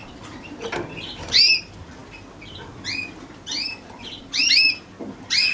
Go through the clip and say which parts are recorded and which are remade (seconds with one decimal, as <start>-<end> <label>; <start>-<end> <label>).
0.0-0.6 remade; 0.6-3.6 recorded; 3.6-4.3 remade; 4.3-5.5 recorded